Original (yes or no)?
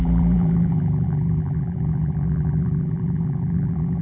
no